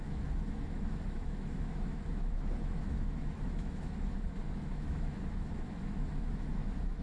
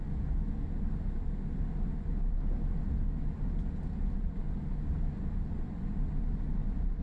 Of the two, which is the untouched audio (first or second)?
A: second